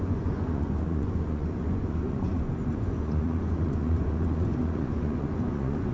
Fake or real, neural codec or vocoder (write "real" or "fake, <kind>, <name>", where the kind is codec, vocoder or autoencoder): fake, vocoder, Vocos